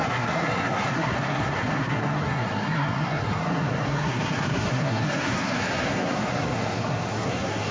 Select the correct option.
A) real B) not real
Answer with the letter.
B